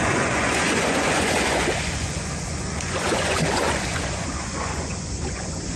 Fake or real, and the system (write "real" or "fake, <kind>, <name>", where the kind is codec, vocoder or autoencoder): fake, vocoder, Vocos